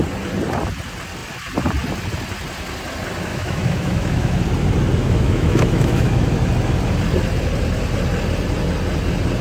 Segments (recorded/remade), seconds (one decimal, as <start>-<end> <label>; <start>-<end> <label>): 0.0-3.3 recorded; 3.3-4.4 remade; 4.4-5.0 recorded; 5.0-6.3 remade; 6.3-9.4 recorded